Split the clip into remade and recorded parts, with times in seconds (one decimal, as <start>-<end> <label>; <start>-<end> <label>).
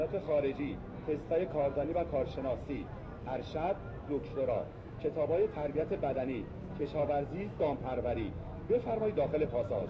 0.0-4.3 recorded; 4.3-5.0 remade; 5.0-6.8 recorded; 6.8-7.6 remade; 7.6-9.9 recorded